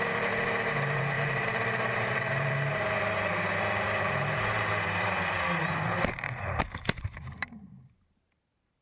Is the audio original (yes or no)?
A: no